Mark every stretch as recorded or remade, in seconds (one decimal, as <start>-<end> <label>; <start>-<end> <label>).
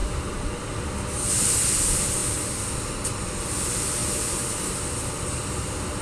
0.0-6.0 recorded